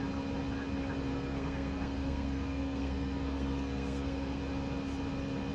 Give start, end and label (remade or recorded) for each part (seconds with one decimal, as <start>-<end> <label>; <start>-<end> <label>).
0.0-1.1 recorded; 1.1-4.4 remade; 4.4-5.5 recorded